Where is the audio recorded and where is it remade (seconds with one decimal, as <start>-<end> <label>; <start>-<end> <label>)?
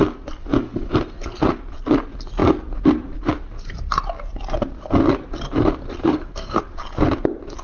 0.0-6.0 recorded; 6.0-6.6 remade; 6.6-7.6 recorded